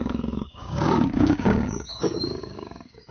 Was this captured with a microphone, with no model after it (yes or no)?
no